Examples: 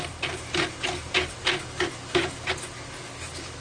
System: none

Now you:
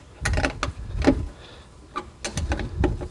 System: none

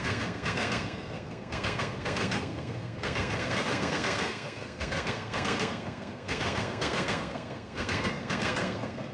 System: codec, SNAC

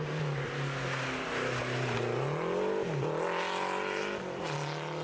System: none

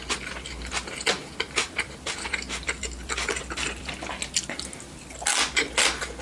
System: none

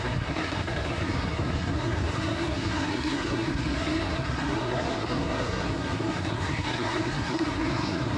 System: codec, SNAC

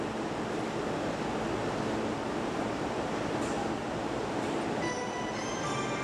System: none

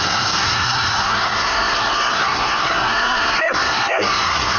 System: codec, SNAC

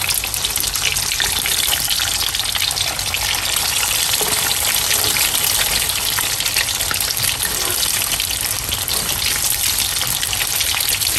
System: none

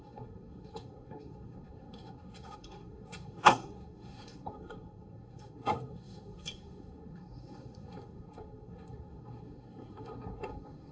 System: codec, SNAC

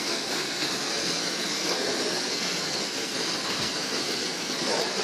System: codec, SNAC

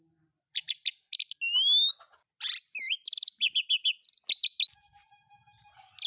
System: none